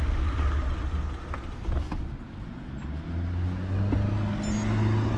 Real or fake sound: real